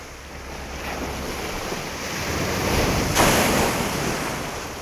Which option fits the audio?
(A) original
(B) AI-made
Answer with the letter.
A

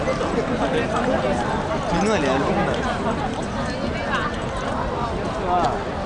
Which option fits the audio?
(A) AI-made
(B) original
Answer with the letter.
B